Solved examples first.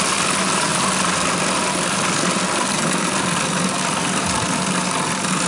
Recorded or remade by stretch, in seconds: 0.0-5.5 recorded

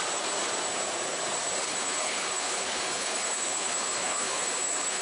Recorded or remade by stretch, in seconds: 0.0-1.7 recorded; 1.7-5.0 remade

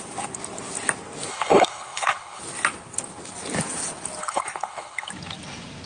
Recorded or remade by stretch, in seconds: 0.0-1.3 recorded; 1.3-2.4 remade; 2.4-4.2 recorded; 4.2-5.1 remade; 5.1-5.9 recorded

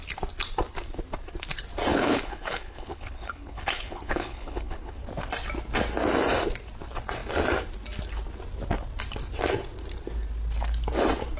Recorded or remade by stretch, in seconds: 0.0-1.9 recorded; 1.9-5.0 remade; 5.0-11.4 recorded

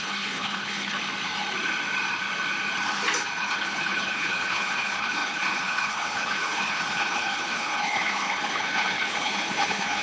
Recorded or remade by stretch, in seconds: 0.0-1.0 remade; 1.0-3.4 recorded; 3.4-10.0 remade